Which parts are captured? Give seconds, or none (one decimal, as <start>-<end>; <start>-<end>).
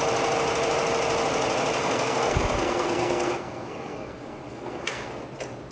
0.0-1.8; 5.2-5.7